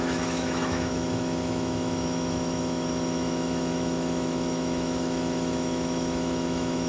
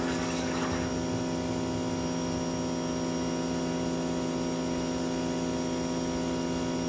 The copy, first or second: first